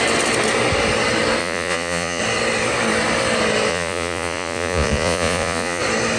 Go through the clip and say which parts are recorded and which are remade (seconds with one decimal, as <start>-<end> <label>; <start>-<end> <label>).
0.0-1.4 recorded; 1.4-2.2 remade; 2.2-3.7 recorded; 3.7-5.8 remade; 5.8-6.2 recorded